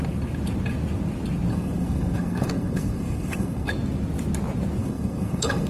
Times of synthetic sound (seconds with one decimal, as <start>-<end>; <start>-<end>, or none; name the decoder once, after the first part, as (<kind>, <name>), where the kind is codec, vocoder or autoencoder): 1.5-3.7 (codec, SNAC); 4.8-5.7